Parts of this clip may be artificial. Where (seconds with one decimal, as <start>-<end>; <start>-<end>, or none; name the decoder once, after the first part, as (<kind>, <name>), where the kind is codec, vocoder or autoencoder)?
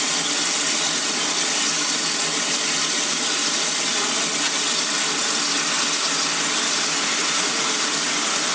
7.2-7.7 (vocoder, Vocos)